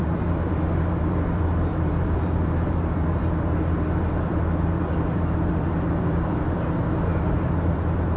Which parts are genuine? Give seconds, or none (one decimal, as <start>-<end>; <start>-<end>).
none